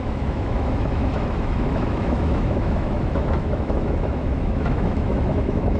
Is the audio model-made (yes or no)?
yes